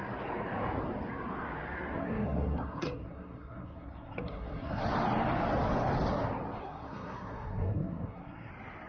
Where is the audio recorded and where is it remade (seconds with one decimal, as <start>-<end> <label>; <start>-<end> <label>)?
0.0-2.0 recorded; 2.0-4.8 remade; 4.8-6.6 recorded; 6.6-8.5 remade; 8.5-8.9 recorded